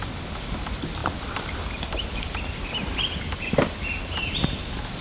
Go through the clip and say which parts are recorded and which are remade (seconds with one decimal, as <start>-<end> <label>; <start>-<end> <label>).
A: 0.0-5.0 recorded